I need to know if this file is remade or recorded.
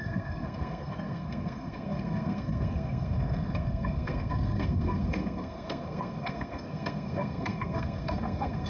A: remade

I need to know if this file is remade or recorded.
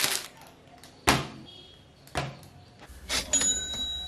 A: recorded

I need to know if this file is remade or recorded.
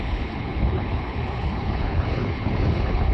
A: remade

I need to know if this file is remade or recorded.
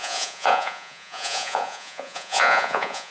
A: remade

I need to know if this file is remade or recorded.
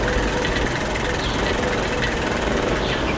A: recorded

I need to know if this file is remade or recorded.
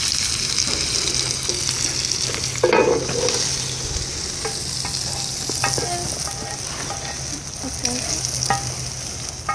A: recorded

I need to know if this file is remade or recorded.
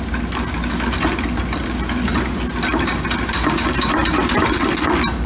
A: recorded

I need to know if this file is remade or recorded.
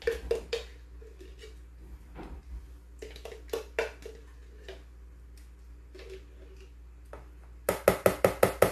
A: recorded